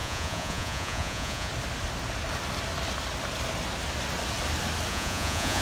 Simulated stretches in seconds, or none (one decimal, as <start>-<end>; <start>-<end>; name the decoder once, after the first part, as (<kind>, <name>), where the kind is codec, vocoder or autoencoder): 0.0-1.5 (vocoder, Vocos); 4.9-5.6